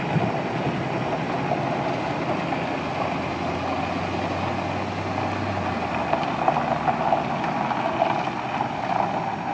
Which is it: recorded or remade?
recorded